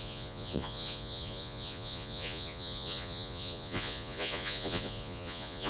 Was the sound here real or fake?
fake